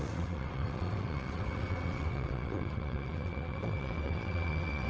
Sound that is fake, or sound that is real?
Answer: fake